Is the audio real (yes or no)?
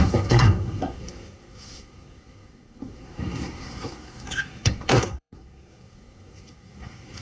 no